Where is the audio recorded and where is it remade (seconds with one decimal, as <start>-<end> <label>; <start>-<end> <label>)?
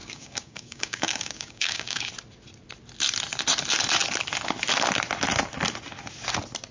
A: 0.0-2.1 remade; 2.1-6.7 recorded